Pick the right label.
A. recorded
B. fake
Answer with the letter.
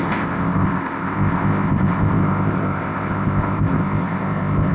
B